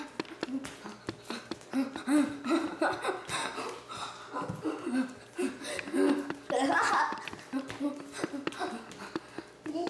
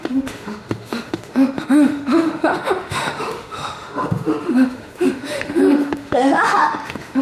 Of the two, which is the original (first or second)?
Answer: first